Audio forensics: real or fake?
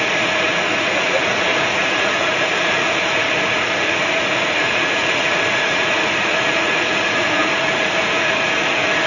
fake